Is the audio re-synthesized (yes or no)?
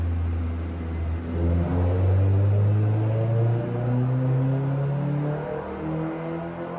no